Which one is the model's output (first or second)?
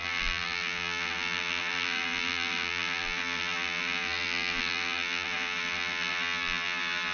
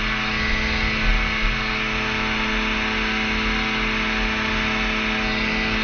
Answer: first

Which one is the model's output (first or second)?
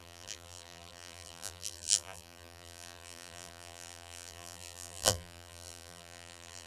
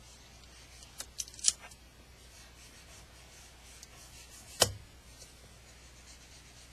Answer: first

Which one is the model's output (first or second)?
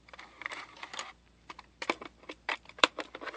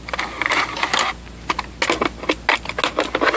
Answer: first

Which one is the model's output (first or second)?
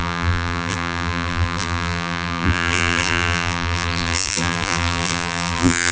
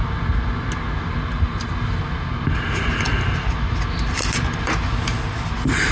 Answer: first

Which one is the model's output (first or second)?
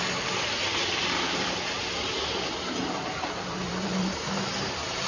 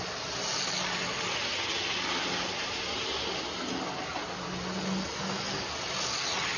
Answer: first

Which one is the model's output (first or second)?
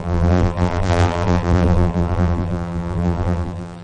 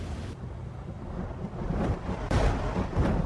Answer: first